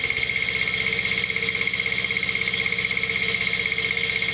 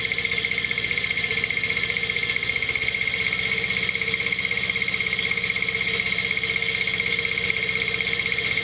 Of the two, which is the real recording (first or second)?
first